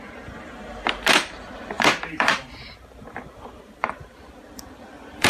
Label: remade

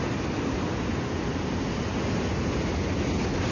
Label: recorded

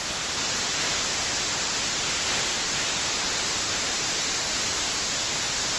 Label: recorded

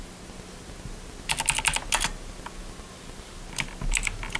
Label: recorded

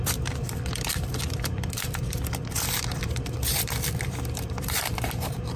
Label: remade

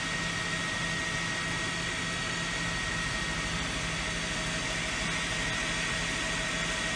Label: recorded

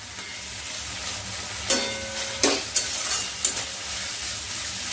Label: recorded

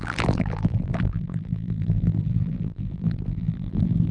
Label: remade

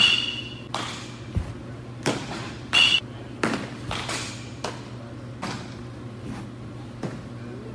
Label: recorded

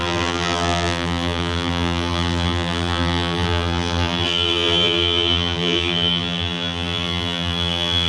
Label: remade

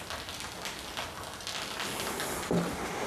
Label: recorded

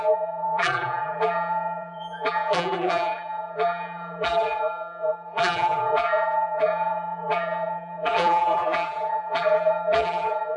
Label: remade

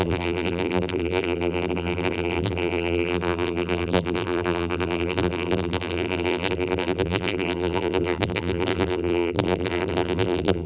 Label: remade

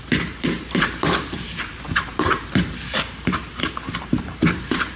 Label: remade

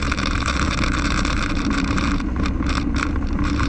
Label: remade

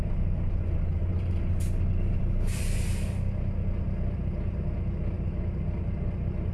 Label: recorded